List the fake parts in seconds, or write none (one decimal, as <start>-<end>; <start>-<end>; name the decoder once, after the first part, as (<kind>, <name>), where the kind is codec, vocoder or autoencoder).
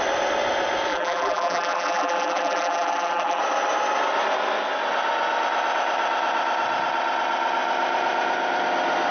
0.9-3.4 (vocoder, BigVGAN v2)